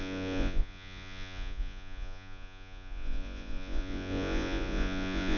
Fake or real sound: fake